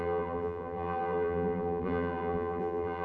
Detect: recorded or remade remade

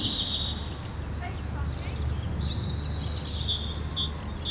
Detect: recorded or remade recorded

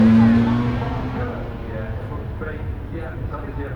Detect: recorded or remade recorded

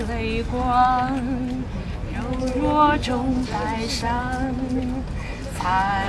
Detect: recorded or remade recorded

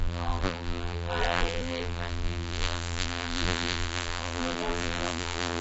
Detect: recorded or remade remade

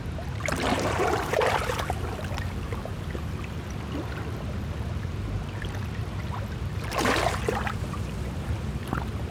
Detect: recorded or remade remade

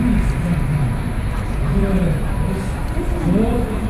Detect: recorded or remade recorded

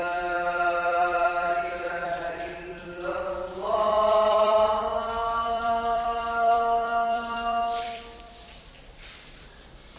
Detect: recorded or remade remade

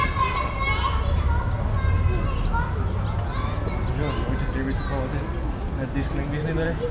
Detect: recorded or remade recorded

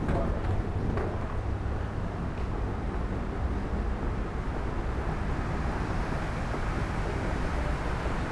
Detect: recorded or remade recorded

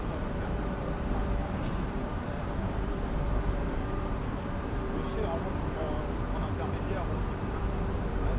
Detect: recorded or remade remade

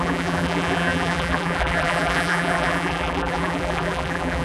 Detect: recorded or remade remade